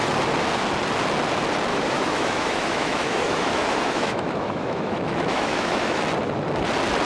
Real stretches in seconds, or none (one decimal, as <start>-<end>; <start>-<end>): 0.0-1.7; 6.0-7.1